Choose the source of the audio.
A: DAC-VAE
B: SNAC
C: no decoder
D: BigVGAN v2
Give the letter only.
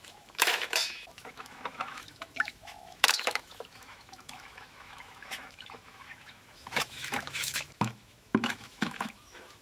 A